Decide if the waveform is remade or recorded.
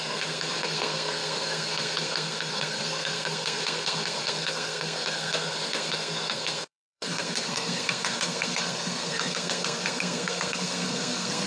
remade